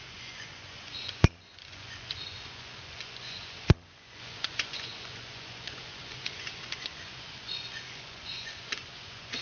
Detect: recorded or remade remade